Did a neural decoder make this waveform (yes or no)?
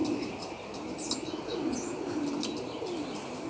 no